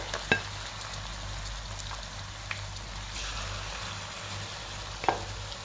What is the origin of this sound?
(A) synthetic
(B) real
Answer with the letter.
B